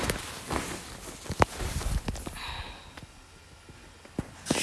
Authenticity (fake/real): real